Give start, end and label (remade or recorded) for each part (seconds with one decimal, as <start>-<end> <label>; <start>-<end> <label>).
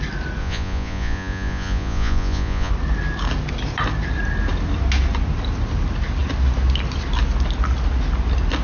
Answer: 0.0-0.4 recorded; 0.4-2.7 remade; 2.7-8.6 recorded